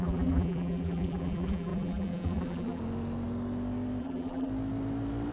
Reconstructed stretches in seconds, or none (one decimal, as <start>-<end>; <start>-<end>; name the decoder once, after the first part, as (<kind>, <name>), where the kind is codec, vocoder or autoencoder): 0.0-2.8 (vocoder, BigVGAN v2); 4.0-4.5

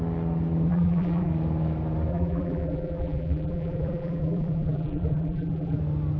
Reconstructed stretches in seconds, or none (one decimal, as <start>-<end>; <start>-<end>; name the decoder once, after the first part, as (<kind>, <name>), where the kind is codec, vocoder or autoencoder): 0.7-1.3 (vocoder, BigVGAN v2); 2.1-5.8

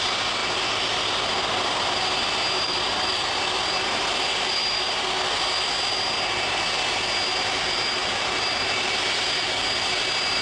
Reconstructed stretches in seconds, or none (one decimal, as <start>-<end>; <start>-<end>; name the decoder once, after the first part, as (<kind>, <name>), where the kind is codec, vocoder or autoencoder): 0.4-5.7 (vocoder, BigVGAN v2); 8.0-8.9

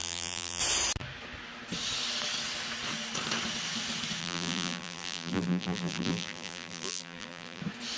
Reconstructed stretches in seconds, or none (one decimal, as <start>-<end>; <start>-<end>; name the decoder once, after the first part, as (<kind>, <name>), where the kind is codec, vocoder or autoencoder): 0.0-0.6 (vocoder, BigVGAN v2); 4.2-7.6